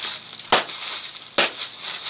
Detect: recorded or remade recorded